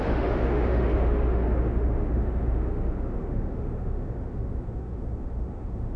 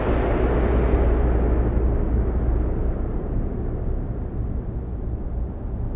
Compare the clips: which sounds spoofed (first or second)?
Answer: first